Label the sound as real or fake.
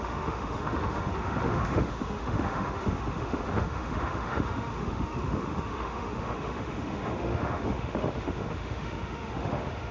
fake